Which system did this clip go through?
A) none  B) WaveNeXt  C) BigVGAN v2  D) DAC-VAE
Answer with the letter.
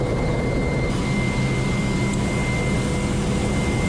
A